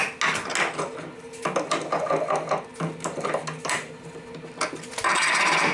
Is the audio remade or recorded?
recorded